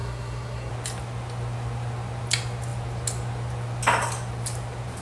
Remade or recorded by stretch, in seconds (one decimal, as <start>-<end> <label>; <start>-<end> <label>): 0.0-0.7 remade; 0.7-5.0 recorded